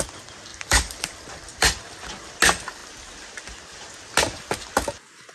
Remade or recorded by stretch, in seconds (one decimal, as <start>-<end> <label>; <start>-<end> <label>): 0.0-0.5 recorded; 0.5-2.1 remade; 2.1-5.3 recorded